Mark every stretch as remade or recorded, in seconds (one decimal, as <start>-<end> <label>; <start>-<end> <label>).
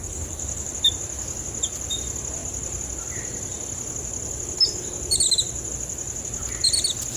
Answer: 0.0-0.8 remade; 0.8-7.2 recorded